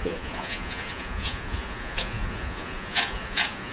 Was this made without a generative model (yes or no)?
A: no